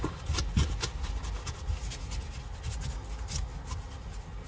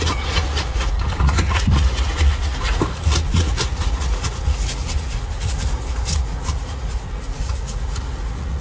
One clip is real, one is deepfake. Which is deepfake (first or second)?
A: second